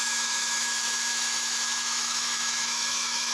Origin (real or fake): fake